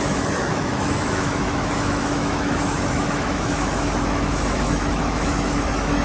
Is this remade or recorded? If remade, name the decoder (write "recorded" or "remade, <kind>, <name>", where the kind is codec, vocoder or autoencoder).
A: remade, autoencoder, DAC-VAE